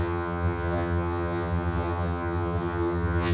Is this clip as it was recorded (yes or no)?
no